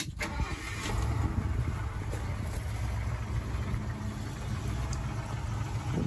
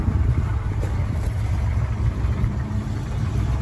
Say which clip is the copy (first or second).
second